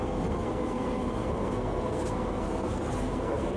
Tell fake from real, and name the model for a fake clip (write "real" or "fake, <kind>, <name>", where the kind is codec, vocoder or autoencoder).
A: fake, codec, SNAC